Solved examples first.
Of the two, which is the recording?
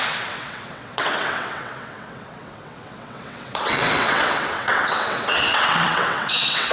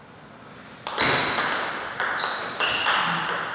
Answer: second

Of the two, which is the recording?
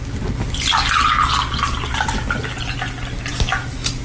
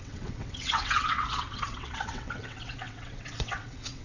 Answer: first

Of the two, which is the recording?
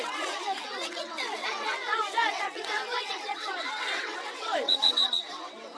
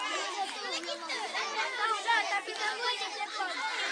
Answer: second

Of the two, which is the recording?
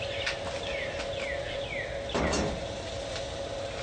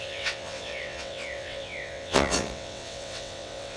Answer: first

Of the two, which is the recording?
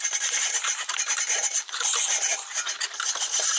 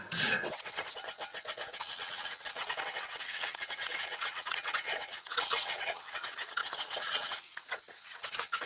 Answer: first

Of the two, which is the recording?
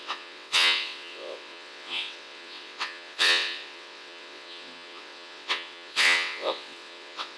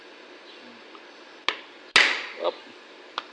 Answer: second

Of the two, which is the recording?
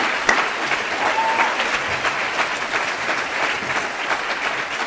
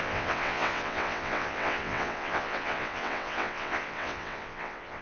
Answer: first